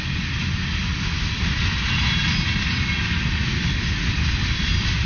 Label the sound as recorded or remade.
recorded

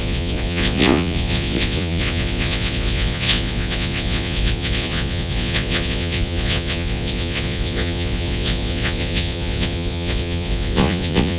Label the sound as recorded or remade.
remade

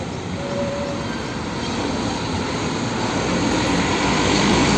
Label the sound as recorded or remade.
remade